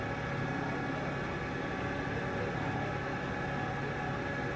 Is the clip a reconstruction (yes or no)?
no